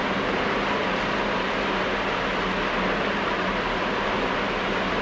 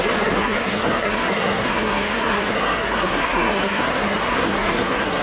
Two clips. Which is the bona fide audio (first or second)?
first